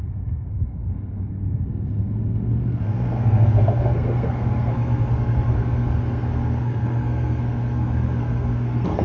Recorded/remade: remade